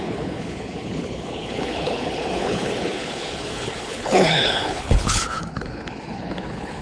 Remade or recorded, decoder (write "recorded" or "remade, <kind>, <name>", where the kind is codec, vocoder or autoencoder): remade, codec, HILCodec